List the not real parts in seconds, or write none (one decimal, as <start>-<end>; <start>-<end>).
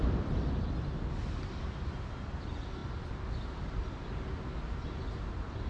none